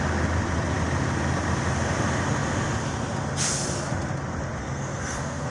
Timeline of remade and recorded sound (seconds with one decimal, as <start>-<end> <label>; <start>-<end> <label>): 0.0-4.6 recorded; 4.6-5.5 remade